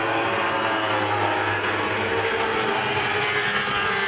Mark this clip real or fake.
real